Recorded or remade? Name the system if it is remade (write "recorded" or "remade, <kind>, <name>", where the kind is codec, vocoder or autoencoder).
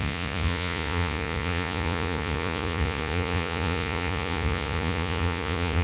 remade, vocoder, Vocos